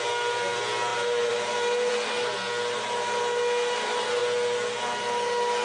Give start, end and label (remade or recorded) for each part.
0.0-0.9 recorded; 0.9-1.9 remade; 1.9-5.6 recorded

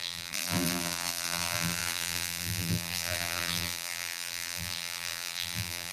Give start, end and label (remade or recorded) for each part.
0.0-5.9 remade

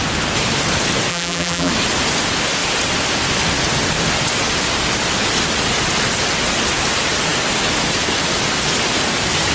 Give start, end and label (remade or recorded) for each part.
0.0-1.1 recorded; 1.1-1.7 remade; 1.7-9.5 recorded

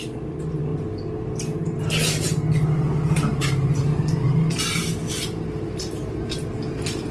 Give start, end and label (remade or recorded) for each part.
0.0-7.1 recorded

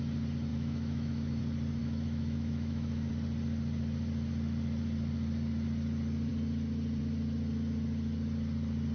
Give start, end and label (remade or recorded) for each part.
0.0-0.5 recorded; 0.5-1.4 remade; 1.4-1.8 recorded; 1.8-3.1 remade; 3.1-8.9 recorded